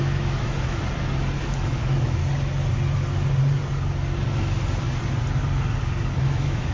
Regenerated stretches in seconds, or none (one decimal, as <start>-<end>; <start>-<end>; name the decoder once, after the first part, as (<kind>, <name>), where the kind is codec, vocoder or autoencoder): 0.0-0.8 (autoencoder, DAC-VAE); 1.4-2.2; 6.2-6.7